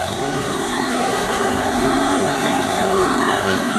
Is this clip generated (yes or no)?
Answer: yes